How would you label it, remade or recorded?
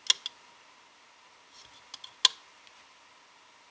recorded